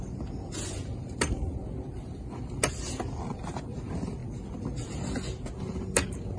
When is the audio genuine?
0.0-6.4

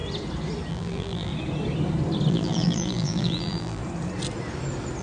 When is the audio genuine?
0.0-0.7; 1.3-2.3; 3.8-5.0

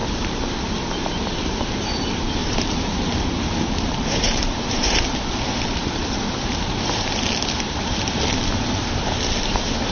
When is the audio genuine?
0.0-2.4; 5.0-5.8; 6.6-9.9

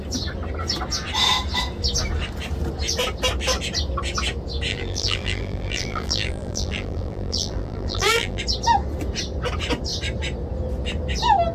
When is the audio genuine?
0.0-4.7; 8.4-11.5

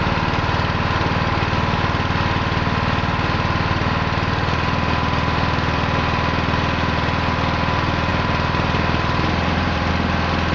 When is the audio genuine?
0.0-8.1; 9.9-10.5

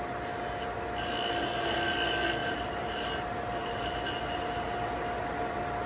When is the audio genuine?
0.0-2.4; 4.5-5.9